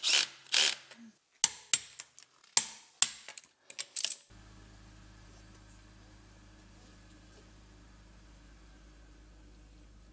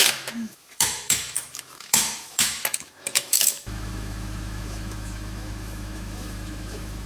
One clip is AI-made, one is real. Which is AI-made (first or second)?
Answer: second